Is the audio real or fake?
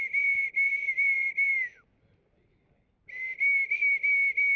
real